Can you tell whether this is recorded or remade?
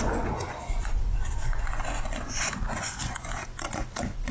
remade